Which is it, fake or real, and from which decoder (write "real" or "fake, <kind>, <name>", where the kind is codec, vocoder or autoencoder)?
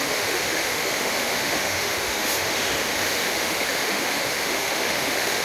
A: fake, autoencoder, DAC-VAE